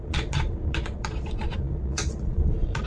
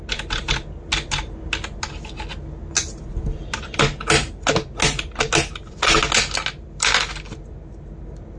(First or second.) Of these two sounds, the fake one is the first